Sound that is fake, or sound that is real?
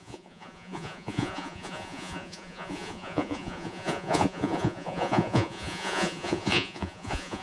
fake